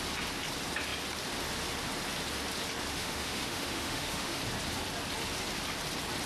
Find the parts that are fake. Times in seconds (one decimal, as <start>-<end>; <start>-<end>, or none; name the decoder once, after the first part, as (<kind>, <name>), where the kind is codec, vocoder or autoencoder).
2.9-4.4 (autoencoder, DAC-VAE)